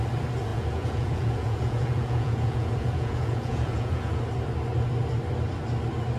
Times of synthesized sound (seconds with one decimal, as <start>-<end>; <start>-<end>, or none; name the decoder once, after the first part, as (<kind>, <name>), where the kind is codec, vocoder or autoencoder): 0.5-4.2 (vocoder, Vocos)